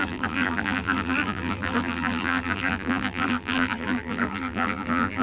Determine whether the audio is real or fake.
fake